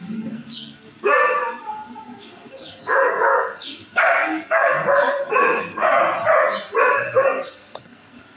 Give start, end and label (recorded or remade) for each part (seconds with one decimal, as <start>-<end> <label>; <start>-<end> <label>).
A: 0.0-6.0 remade; 6.0-6.8 recorded; 6.8-8.4 remade